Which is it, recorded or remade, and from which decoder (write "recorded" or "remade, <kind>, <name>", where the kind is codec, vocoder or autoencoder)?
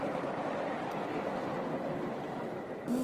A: recorded